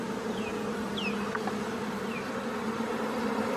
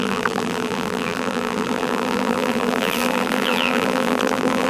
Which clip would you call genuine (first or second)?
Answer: first